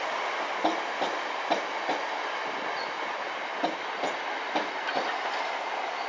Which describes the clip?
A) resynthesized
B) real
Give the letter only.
B